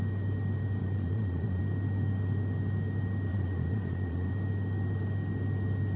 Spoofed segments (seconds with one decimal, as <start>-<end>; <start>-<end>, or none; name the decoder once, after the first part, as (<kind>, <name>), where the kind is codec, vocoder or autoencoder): 0.8-1.6 (vocoder, Vocos); 3.3-4.3